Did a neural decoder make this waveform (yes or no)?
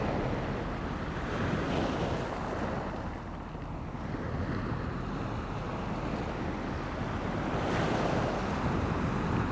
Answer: no